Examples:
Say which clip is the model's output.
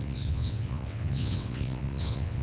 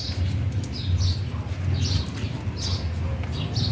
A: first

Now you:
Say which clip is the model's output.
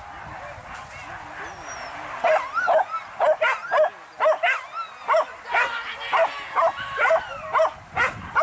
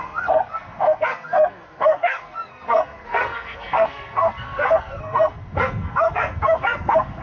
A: second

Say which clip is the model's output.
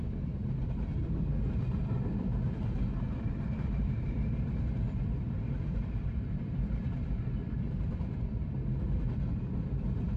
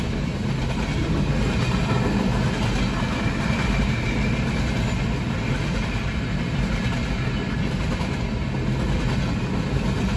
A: first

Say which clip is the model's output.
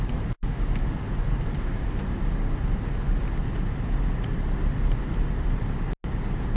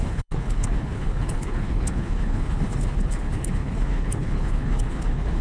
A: second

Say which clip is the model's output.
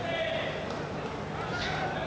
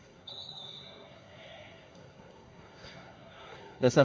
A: second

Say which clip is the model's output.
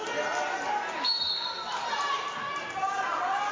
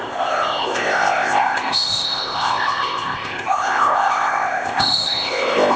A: second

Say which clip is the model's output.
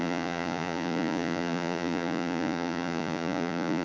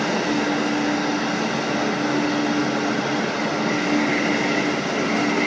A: first